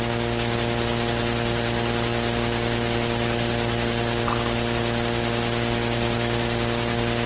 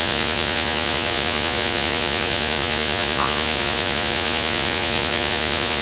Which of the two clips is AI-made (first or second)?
second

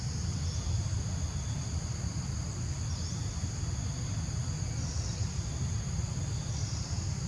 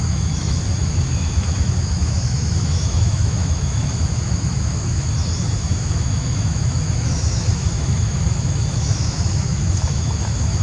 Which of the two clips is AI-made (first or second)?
second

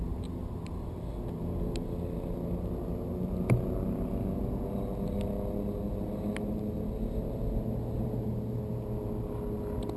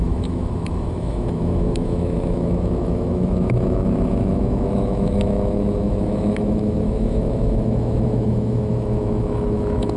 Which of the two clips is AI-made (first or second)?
second